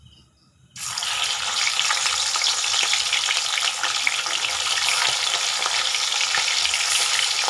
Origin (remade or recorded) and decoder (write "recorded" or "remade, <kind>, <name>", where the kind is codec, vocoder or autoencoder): recorded